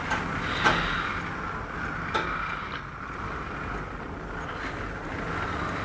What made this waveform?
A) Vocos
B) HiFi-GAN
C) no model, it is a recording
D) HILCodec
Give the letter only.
C